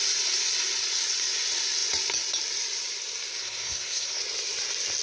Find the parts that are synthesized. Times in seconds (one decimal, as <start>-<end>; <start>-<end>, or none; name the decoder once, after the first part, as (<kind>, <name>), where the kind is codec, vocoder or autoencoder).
3.4-4.2 (codec, SNAC)